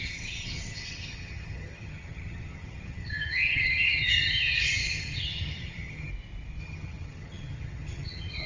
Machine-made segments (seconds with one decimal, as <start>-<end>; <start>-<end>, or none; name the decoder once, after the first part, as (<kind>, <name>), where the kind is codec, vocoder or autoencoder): 0.0-6.1 (vocoder, HiFi-GAN); 6.6-8.5